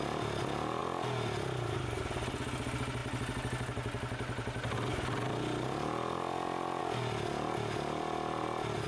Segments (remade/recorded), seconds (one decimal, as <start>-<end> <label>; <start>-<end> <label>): 0.0-8.9 recorded